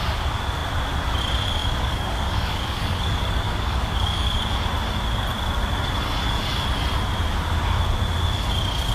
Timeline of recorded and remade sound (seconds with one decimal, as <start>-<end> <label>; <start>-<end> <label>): 0.0-1.6 recorded; 1.6-4.4 remade; 4.4-8.9 recorded